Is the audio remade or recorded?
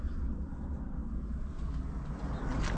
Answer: recorded